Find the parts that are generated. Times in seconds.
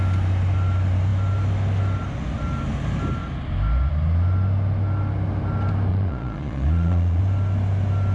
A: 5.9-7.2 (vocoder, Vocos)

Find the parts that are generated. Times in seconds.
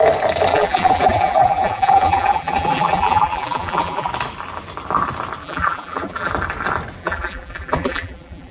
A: 0.5-4.1 (vocoder, BigVGAN v2); 5.4-6.3; 7.0-8.5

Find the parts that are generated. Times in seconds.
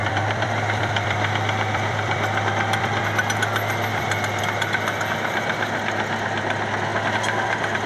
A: 0.0-3.0 (vocoder, BigVGAN v2); 3.9-4.4; 6.9-7.9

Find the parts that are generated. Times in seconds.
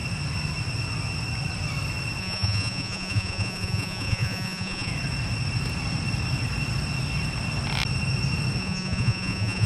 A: 2.2-4.9 (vocoder, Vocos); 8.6-9.7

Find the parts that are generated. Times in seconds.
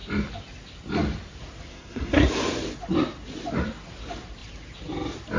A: 1.7-2.3 (codec, SNAC)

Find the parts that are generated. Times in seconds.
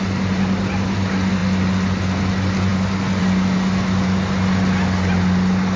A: none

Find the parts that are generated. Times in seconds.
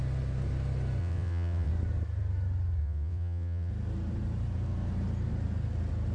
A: 1.0-1.7 (vocoder, WaveNeXt); 2.8-3.7